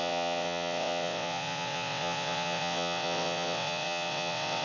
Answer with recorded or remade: remade